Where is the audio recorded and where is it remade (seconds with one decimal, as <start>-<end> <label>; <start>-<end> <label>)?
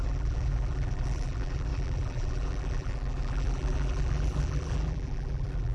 0.0-5.7 remade